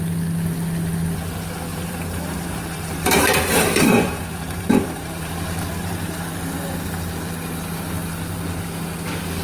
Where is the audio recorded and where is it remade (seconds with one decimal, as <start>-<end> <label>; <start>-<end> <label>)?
0.0-1.7 recorded; 1.7-5.3 remade; 5.3-5.8 recorded; 5.8-6.4 remade; 6.4-9.4 recorded